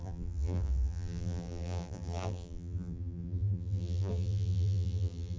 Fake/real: fake